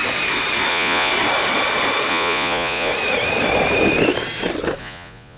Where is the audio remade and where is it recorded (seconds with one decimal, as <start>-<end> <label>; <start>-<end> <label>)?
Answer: 0.0-0.7 recorded; 0.7-1.1 remade; 1.1-2.1 recorded; 2.1-2.9 remade; 2.9-4.8 recorded; 4.8-5.4 remade